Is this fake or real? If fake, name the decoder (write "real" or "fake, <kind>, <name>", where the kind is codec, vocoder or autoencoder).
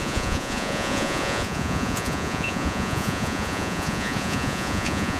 fake, vocoder, Vocos